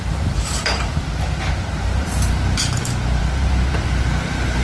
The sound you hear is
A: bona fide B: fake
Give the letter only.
B